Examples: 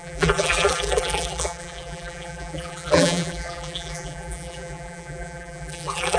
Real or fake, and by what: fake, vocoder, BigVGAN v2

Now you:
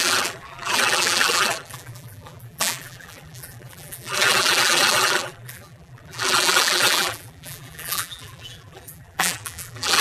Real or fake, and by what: fake, vocoder, BigVGAN v2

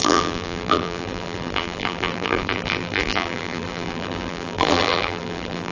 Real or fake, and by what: fake, vocoder, BigVGAN v2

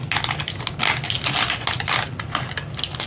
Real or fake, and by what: real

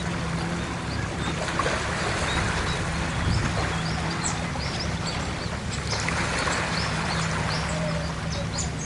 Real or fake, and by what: real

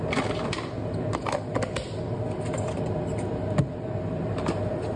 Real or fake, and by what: real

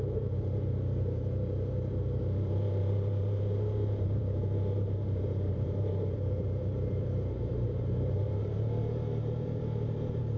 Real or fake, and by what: fake, vocoder, BigVGAN v2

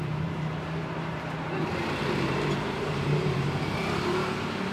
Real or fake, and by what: fake, vocoder, BigVGAN v2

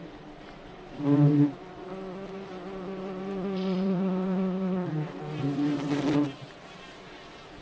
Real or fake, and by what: fake, vocoder, BigVGAN v2